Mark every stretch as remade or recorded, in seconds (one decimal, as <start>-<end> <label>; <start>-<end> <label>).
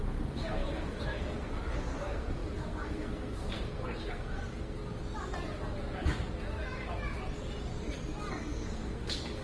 0.0-4.8 remade; 4.8-8.3 recorded; 8.3-9.4 remade